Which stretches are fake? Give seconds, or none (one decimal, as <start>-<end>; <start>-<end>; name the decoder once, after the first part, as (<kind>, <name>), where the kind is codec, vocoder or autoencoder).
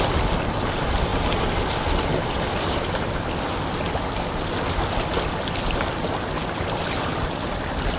none